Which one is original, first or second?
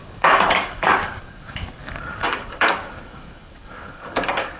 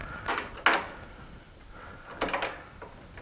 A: second